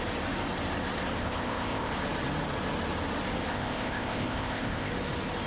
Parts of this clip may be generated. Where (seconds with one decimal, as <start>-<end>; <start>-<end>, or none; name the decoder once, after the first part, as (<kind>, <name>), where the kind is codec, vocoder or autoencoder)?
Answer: 1.2-1.9 (codec, ZipCodec); 3.5-4.9